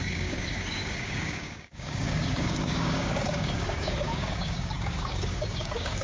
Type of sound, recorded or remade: remade